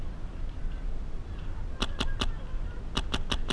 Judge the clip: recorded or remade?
recorded